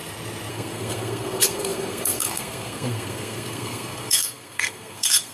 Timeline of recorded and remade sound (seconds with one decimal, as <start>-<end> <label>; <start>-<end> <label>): 0.0-0.5 recorded; 0.5-5.3 remade